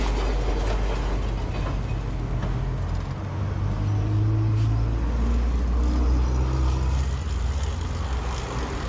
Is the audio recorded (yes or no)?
yes